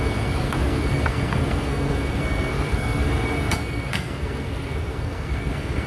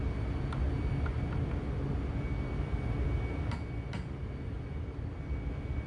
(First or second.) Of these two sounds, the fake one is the first